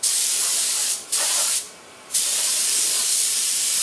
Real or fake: fake